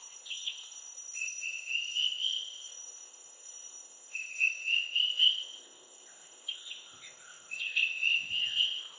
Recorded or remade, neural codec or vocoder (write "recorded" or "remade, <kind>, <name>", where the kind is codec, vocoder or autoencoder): remade, codec, ZipCodec